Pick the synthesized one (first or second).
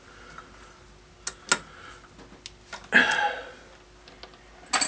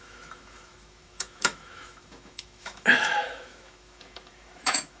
second